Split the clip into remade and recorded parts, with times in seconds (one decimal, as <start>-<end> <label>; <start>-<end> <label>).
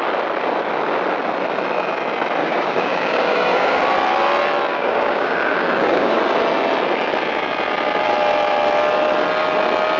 0.0-2.4 recorded; 2.4-3.8 remade; 3.8-4.7 recorded; 4.7-6.2 remade; 6.2-10.0 recorded